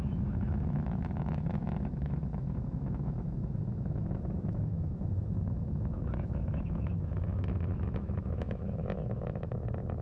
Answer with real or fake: fake